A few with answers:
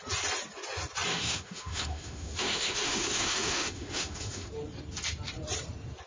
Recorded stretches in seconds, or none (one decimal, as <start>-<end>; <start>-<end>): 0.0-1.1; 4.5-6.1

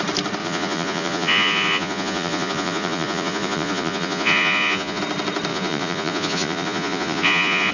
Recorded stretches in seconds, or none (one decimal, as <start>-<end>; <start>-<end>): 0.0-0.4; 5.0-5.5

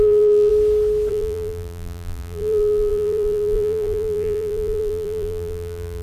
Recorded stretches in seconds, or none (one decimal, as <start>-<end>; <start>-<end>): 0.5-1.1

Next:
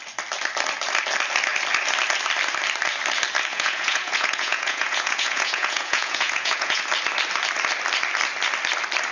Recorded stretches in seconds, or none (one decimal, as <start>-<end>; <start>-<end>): 0.0-3.5; 6.8-9.1

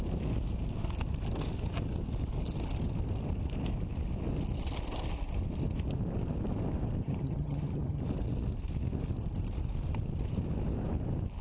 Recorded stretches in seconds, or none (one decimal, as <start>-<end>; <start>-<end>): 0.0-7.0; 8.0-11.4

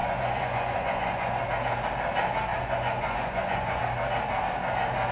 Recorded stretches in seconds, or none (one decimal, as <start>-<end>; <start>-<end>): 1.4-2.5; 3.8-5.1

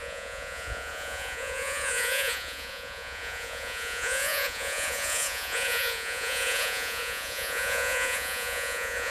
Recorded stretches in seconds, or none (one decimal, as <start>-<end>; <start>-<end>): none